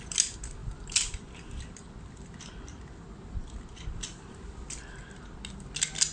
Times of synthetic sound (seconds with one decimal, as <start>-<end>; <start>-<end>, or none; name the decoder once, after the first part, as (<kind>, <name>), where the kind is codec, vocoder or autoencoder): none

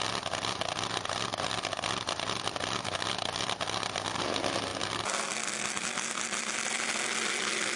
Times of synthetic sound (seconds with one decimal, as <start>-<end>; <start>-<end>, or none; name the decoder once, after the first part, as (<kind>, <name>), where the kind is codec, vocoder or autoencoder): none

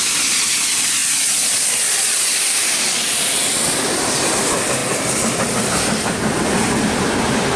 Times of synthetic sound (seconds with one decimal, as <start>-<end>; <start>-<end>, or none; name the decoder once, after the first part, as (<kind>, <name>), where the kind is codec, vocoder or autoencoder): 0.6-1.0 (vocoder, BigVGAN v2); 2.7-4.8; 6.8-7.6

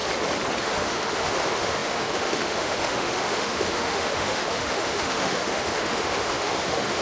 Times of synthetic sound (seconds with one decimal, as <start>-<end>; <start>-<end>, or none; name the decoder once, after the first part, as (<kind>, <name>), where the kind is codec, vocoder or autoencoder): 0.6-7.0 (autoencoder, DAC-VAE)

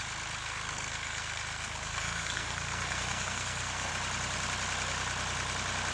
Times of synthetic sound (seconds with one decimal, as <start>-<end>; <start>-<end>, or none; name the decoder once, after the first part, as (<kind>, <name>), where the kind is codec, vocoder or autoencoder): 0.4-3.9 (codec, SNAC)

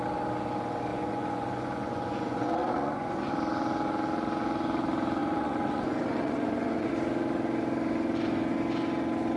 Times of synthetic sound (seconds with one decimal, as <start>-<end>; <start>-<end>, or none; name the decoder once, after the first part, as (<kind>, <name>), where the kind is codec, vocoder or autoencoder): 0.9-3.3 (vocoder, Vocos); 5.2-6.9

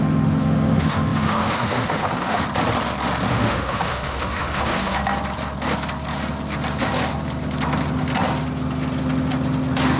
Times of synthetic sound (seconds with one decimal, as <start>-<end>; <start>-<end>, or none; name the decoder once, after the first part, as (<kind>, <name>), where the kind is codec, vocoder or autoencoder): 0.0-2.4 (autoencoder, DAC-VAE); 3.3-5.0